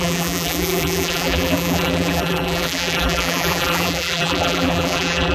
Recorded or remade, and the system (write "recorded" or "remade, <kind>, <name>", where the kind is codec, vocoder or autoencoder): remade, vocoder, BigVGAN v2